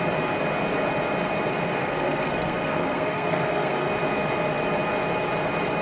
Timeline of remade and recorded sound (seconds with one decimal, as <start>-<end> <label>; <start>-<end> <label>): 0.0-1.8 recorded; 1.8-3.9 remade; 3.9-5.8 recorded